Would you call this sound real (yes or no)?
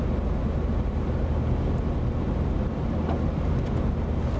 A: yes